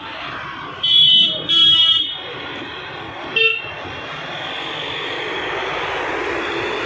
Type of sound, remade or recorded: recorded